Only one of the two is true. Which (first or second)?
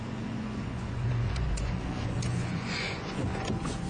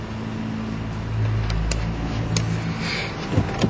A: second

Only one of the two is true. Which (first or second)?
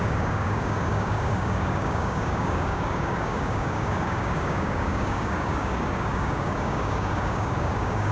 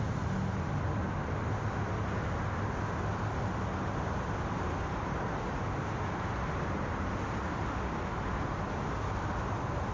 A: second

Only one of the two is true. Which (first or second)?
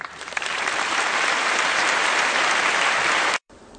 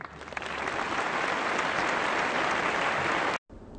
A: second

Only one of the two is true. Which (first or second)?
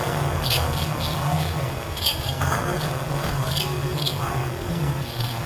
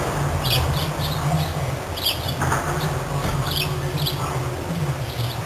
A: second